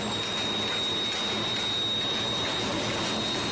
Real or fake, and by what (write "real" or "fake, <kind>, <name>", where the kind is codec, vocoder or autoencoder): real